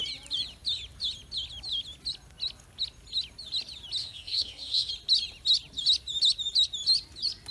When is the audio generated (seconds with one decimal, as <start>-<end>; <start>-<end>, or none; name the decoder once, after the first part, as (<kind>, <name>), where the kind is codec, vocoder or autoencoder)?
4.0-4.9 (codec, SNAC)